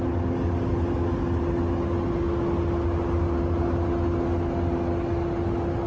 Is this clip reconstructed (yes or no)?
no